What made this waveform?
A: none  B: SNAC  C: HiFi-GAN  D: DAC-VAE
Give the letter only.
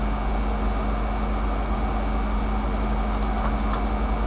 A